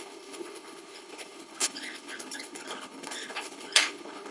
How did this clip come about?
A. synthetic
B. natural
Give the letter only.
A